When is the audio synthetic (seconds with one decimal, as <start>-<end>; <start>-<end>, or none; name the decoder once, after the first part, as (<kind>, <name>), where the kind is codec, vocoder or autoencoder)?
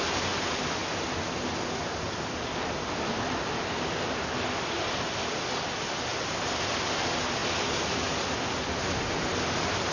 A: none